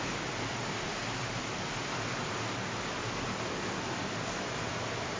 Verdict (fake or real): real